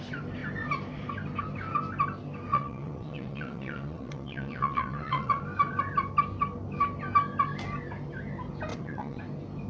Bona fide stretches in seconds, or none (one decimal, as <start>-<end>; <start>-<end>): 0.0-2.5; 5.4-8.7; 9.2-9.7

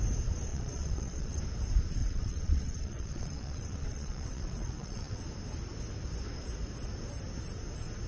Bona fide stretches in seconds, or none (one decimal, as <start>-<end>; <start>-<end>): 0.0-0.5; 1.4-2.0; 5.2-8.1

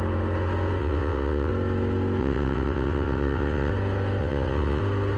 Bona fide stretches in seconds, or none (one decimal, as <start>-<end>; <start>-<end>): 0.0-0.8; 1.5-2.2; 3.7-4.2; 4.8-5.2

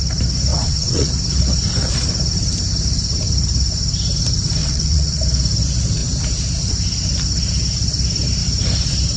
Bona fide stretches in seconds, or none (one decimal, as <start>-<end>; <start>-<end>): 0.0-0.5; 1.1-4.6; 5.2-9.2

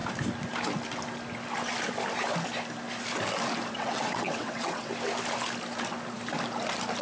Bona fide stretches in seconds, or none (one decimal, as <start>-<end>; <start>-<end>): 0.0-3.7; 4.9-7.0